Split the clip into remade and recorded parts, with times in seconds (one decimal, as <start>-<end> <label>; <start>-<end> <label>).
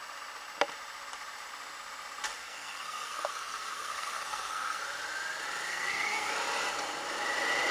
0.0-2.4 recorded; 2.4-4.8 remade; 4.8-5.7 recorded; 5.7-6.3 remade; 6.3-7.7 recorded